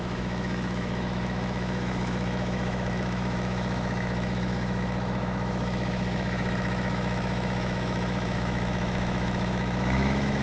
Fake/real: fake